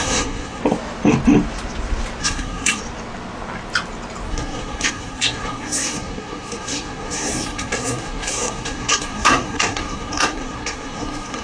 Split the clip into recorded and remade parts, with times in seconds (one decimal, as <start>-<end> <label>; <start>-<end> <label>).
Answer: 0.0-0.6 remade; 0.6-2.2 recorded; 2.2-2.8 remade; 2.8-4.3 recorded; 4.3-11.4 remade